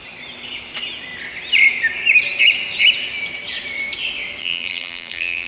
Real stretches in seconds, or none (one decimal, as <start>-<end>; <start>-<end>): 0.0-4.4